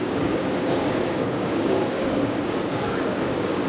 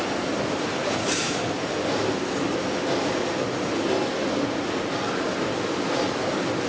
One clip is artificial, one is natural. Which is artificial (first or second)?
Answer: first